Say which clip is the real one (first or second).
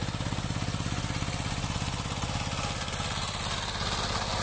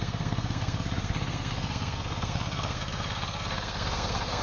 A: first